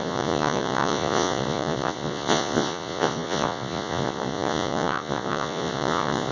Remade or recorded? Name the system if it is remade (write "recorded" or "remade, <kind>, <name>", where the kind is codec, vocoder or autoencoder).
remade, vocoder, Vocos